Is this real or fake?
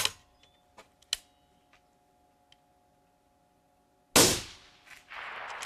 real